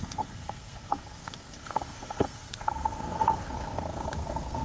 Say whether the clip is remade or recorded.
remade